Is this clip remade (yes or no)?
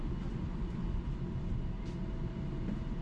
no